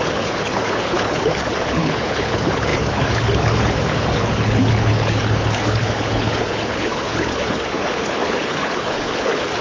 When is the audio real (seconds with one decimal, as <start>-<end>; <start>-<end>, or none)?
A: none